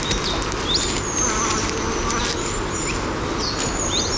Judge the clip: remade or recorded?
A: recorded